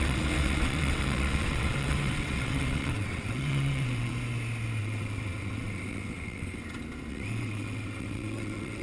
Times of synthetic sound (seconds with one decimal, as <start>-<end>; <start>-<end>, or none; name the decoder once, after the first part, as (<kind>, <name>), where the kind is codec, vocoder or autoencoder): 0.0-4.1 (vocoder, WaveNeXt); 4.8-6.6; 7.1-8.8